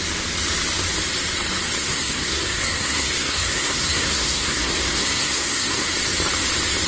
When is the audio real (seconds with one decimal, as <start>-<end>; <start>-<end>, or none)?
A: 0.0-1.8; 5.9-6.9